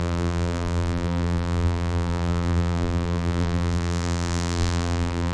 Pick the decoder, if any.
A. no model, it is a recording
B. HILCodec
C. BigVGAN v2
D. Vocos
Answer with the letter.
C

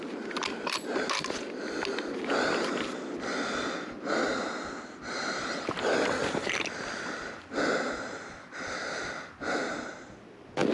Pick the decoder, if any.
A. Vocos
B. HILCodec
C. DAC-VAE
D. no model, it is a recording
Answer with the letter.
D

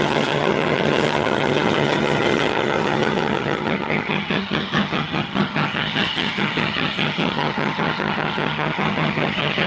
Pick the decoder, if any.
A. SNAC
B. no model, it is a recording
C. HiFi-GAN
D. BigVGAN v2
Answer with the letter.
C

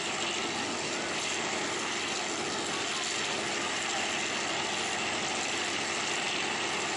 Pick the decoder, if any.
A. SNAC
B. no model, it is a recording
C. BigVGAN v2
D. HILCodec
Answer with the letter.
B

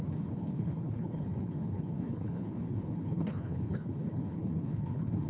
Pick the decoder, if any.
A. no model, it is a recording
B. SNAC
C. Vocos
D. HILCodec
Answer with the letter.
D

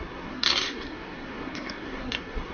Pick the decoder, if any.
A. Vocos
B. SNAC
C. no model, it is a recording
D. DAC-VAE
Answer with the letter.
B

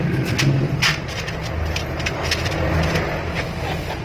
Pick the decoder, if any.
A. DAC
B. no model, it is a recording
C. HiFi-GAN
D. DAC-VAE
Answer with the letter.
B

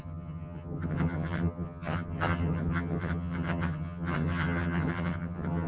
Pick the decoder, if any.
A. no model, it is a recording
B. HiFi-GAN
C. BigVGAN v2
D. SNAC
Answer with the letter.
B